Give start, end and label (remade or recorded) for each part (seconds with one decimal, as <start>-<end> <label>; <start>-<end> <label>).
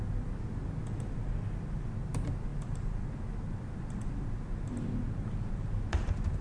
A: 0.0-6.4 recorded